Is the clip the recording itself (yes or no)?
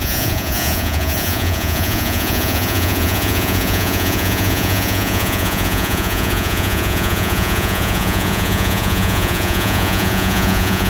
no